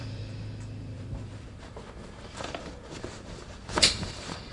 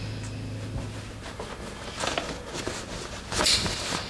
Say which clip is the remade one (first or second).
first